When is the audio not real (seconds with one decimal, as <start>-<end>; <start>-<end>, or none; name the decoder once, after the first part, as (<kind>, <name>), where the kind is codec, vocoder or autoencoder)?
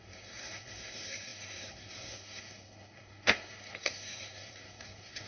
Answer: 0.0-5.3 (codec, SNAC)